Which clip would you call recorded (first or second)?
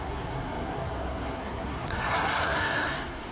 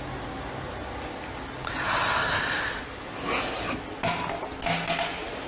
second